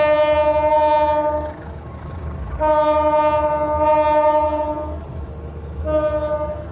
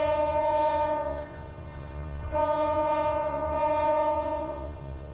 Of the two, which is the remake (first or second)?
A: second